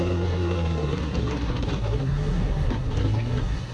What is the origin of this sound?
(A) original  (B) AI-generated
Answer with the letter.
B